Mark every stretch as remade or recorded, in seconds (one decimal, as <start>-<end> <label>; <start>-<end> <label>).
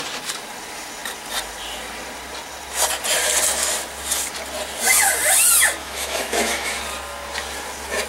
0.0-5.8 recorded; 5.8-6.8 remade; 6.8-8.1 recorded